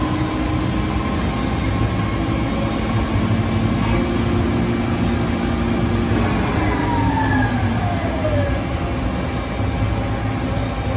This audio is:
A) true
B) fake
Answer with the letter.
A